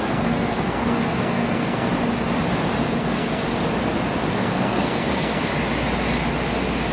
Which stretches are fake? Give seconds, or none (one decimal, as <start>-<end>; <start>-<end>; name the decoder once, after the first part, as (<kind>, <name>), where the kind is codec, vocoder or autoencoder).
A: 0.0-1.9 (codec, SNAC); 3.0-3.5; 4.3-5.5